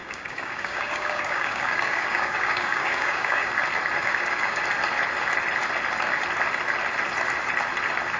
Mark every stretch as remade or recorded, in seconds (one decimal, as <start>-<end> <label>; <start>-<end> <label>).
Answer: 0.0-3.5 remade; 3.5-4.0 recorded; 4.0-4.6 remade; 4.6-8.2 recorded